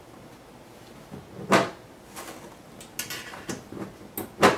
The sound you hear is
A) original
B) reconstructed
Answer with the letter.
A